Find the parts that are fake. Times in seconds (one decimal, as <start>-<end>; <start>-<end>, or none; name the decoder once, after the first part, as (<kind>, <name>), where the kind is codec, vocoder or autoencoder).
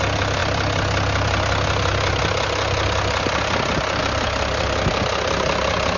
none